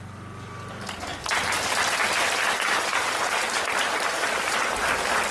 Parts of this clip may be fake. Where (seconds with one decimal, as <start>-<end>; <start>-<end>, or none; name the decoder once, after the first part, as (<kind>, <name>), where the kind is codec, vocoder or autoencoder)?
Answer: none